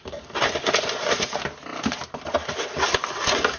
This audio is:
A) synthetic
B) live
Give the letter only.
B